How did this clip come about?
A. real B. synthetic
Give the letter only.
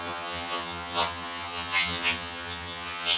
B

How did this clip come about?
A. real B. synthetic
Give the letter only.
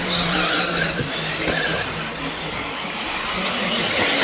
A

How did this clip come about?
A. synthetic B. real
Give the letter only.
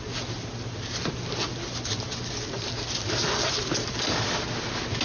B